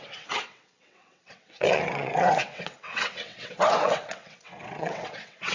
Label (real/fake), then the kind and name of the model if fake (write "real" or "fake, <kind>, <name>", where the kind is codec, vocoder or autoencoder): fake, vocoder, WaveNeXt